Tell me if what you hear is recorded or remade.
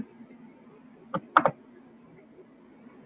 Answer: recorded